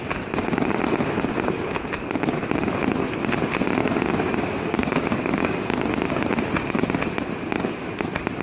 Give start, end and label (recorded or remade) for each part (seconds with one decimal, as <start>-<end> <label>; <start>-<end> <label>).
0.0-3.8 recorded; 3.8-6.1 remade; 6.1-8.4 recorded